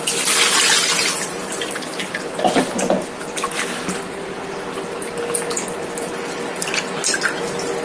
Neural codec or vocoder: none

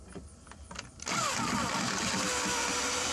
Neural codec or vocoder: none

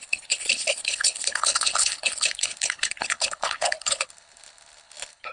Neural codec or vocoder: codec, HILCodec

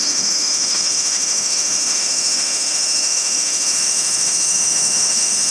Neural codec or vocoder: autoencoder, DAC-VAE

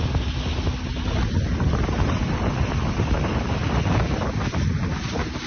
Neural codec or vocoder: none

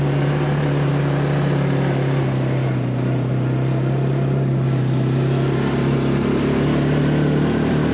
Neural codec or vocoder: none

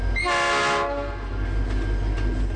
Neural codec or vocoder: none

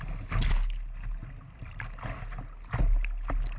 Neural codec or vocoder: none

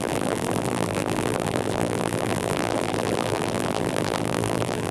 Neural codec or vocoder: vocoder, BigVGAN v2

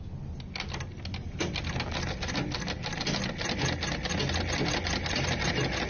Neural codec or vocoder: none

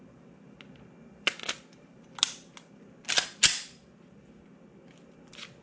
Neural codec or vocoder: none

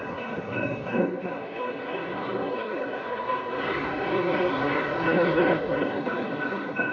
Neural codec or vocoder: codec, SNAC